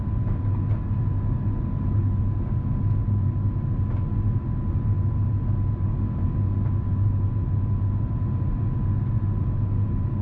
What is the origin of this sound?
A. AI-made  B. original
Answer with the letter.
B